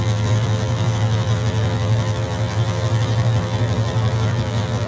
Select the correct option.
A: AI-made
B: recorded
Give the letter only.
A